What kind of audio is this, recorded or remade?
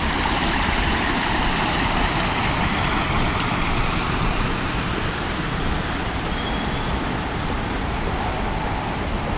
recorded